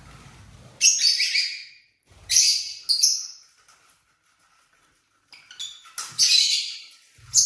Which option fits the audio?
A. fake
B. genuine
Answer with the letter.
B